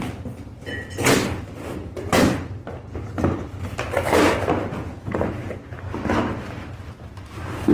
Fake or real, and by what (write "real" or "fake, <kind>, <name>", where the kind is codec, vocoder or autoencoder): real